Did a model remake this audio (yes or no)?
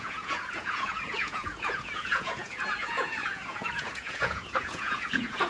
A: yes